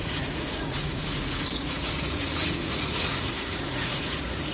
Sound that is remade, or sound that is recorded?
remade